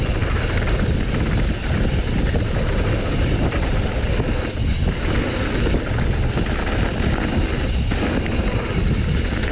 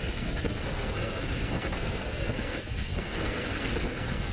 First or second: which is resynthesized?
second